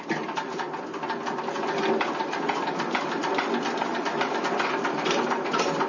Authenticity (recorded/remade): recorded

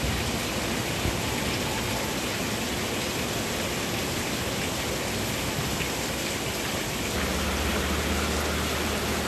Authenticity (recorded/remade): recorded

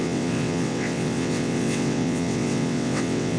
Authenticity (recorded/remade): remade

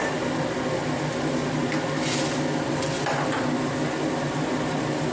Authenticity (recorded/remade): recorded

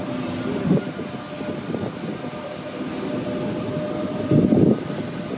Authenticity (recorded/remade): recorded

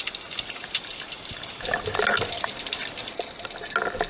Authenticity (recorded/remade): recorded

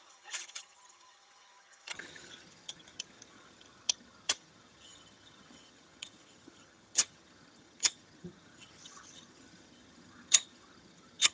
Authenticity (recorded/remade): remade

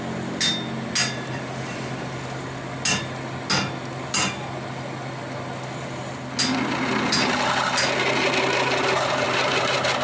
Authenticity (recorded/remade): recorded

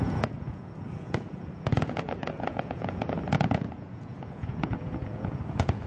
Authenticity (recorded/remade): remade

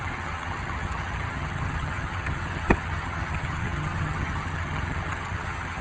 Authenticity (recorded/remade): remade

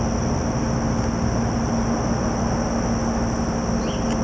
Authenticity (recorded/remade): recorded